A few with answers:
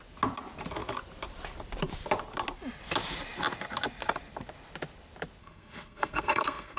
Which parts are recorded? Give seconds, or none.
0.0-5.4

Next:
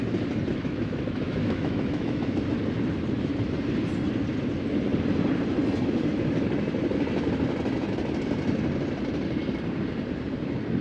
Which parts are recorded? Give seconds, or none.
0.0-0.5; 2.4-10.8

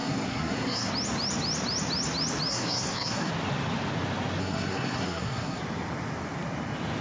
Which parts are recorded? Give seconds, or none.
0.9-2.5; 3.3-4.4; 5.6-7.0